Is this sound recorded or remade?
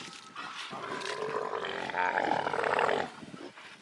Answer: recorded